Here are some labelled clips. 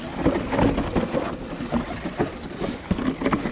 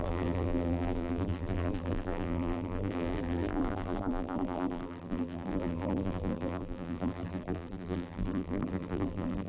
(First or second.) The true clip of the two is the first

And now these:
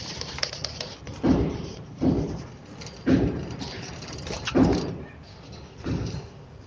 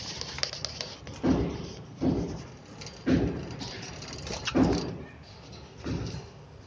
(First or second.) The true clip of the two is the second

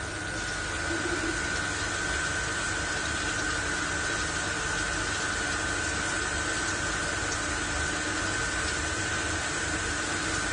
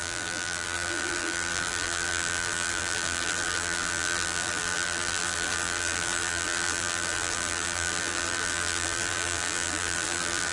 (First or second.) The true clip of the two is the first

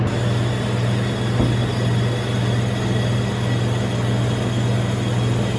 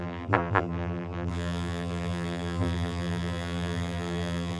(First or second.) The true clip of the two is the first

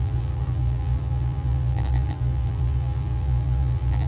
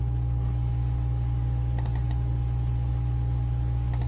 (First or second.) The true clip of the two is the second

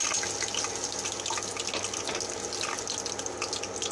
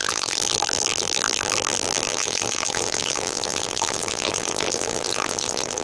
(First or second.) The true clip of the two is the first